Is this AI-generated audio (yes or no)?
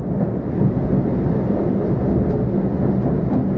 no